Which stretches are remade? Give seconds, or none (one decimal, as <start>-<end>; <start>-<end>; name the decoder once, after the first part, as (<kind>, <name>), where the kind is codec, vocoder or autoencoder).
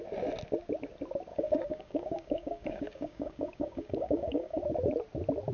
1.3-4.6 (codec, DAC)